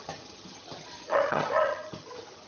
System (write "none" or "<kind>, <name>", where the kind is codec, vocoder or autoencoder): vocoder, HiFi-GAN